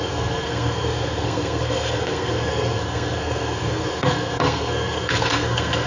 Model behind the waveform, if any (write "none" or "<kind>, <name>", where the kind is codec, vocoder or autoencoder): codec, SNAC